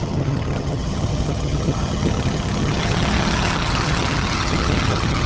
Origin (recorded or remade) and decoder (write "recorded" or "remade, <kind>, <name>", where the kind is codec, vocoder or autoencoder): remade, vocoder, HiFi-GAN